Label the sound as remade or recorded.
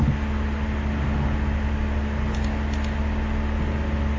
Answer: recorded